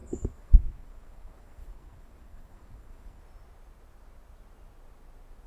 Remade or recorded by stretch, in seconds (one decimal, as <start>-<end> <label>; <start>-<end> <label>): 0.0-3.2 remade; 3.2-5.5 recorded